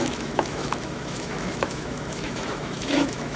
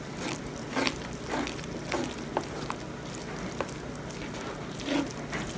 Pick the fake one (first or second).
first